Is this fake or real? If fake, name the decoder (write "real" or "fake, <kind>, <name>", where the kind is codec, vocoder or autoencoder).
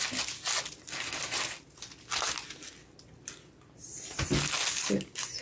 real